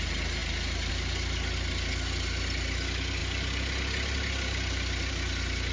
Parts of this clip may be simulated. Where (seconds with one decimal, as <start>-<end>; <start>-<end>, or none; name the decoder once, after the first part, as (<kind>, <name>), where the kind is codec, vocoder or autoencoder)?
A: none